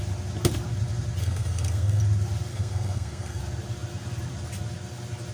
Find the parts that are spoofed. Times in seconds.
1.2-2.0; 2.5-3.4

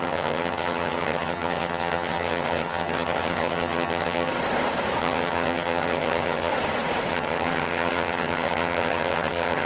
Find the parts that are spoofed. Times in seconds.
0.0-4.3; 5.0-6.5; 7.1-9.7

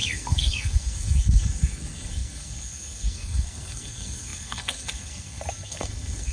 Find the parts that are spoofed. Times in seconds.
0.0-6.3

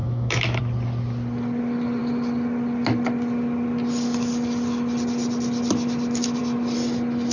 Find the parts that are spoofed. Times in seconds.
0.0-0.6

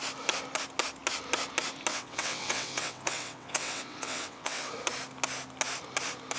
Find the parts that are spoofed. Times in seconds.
1.9-4.7

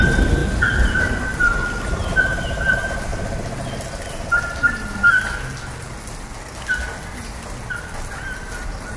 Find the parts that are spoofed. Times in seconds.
0.0-0.4; 2.6-9.0